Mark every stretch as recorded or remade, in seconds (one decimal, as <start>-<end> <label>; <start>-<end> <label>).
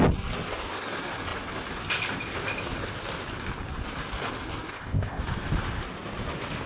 0.0-4.7 recorded; 4.7-5.2 remade; 5.2-6.7 recorded